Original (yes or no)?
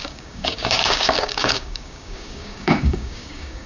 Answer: no